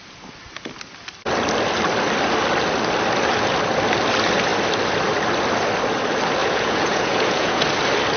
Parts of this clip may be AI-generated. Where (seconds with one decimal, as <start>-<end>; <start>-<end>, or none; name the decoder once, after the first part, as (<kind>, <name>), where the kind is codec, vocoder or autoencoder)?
6.4-7.6 (vocoder, Vocos)